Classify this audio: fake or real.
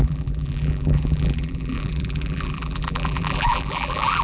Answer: fake